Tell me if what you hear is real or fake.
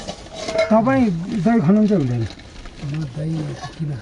real